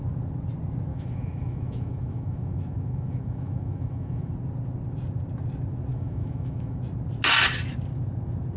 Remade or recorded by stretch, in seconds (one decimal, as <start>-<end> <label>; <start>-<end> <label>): 0.0-0.9 recorded; 0.9-4.3 remade; 4.3-5.9 recorded; 5.9-6.8 remade; 6.8-8.6 recorded